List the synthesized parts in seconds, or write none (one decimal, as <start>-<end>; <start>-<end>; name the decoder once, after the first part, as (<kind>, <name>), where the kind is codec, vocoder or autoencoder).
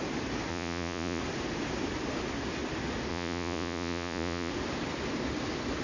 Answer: 0.5-1.2 (vocoder, Vocos); 3.1-4.5